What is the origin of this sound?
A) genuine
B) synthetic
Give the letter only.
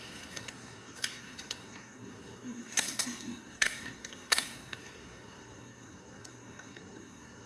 B